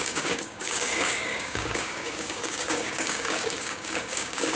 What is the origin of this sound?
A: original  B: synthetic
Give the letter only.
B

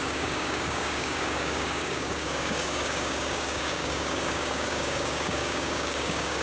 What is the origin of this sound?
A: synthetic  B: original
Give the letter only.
A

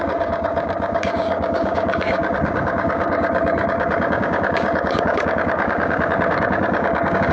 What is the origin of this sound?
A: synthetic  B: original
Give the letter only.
A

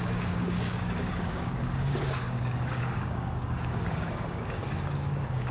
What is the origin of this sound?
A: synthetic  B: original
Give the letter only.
A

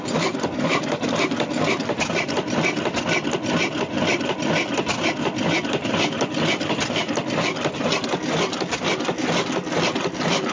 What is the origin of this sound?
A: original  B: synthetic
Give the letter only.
A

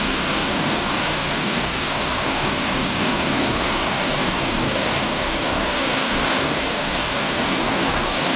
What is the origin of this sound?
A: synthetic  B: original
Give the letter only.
A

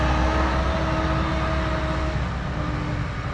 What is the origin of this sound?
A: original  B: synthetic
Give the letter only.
A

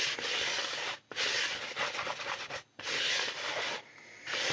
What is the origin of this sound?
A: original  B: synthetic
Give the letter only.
A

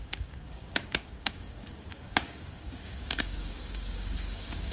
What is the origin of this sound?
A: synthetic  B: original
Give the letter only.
A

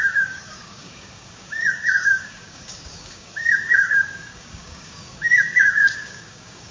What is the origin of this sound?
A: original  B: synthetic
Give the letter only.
B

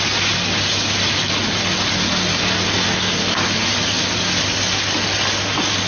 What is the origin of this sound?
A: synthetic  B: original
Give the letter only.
B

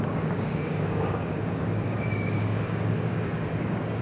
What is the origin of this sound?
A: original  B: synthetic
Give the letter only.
B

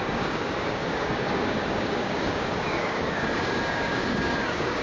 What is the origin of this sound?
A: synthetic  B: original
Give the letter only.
A